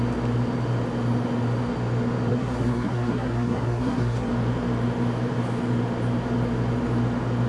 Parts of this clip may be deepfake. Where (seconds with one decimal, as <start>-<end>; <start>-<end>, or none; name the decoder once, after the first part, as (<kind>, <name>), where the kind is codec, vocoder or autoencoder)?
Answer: 2.3-4.3 (codec, SNAC)